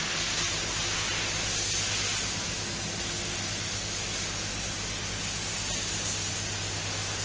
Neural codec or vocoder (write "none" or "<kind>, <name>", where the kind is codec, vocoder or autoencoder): none